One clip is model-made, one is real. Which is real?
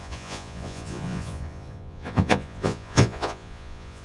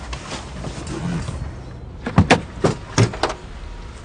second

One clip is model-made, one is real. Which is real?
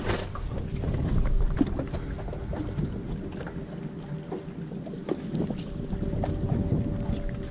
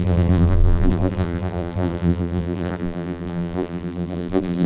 first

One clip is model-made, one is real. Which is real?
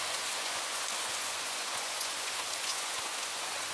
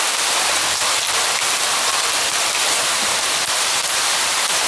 second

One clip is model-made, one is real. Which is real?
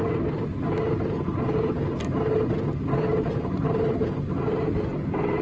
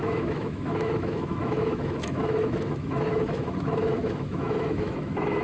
first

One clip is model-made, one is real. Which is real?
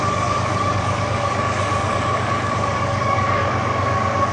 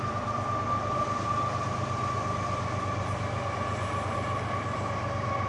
second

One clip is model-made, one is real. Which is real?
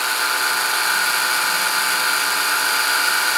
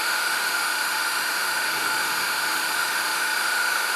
first